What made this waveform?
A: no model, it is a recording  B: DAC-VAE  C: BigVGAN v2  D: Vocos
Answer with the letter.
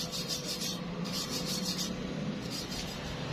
A